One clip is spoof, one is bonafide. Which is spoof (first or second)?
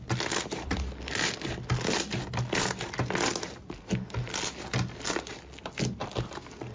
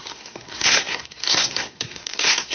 second